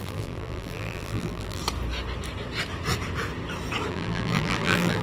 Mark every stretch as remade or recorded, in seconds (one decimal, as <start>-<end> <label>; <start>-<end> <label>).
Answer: 0.0-1.6 remade; 1.6-3.9 recorded; 3.9-5.0 remade